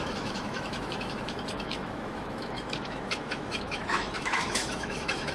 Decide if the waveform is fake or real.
fake